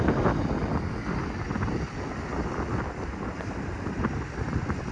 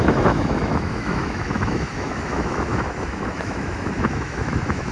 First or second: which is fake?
second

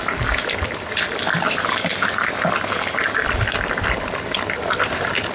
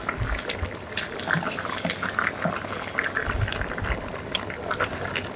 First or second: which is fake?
first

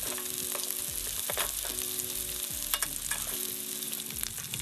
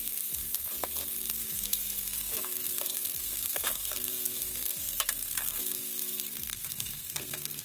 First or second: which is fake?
second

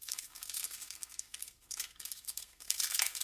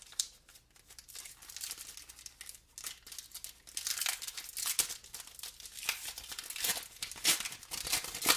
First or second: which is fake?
first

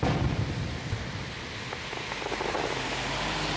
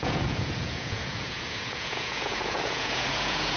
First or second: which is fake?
second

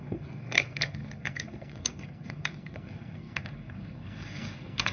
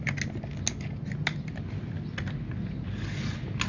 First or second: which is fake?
first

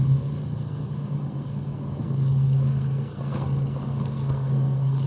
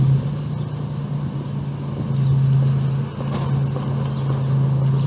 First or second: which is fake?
first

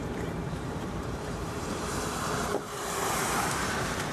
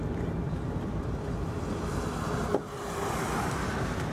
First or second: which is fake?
first